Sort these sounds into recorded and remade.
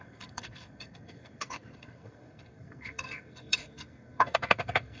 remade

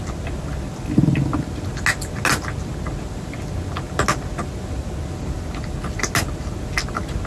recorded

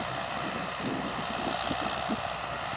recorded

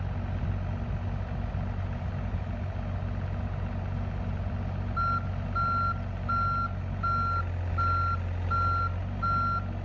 recorded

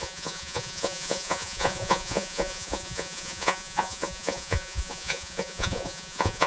remade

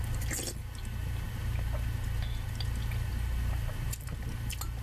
recorded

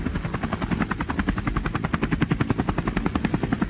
recorded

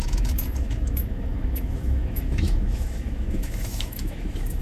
remade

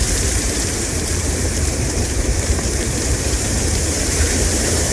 remade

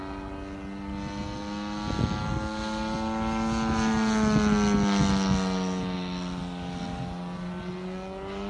recorded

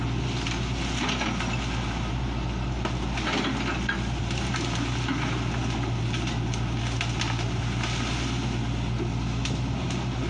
recorded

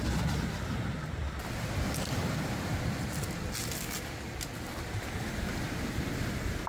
recorded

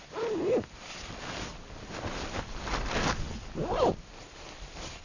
recorded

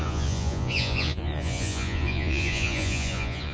remade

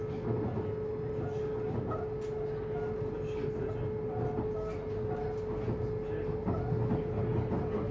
recorded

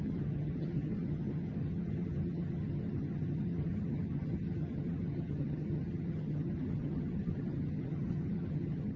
remade